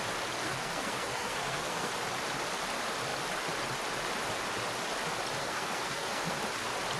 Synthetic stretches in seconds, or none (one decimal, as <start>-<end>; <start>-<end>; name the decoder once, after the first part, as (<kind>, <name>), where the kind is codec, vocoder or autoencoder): 0.4-1.9 (codec, SNAC); 5.4-6.4